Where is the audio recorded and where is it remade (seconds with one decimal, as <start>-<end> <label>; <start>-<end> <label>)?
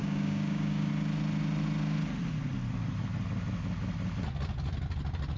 0.0-0.9 remade; 0.9-5.4 recorded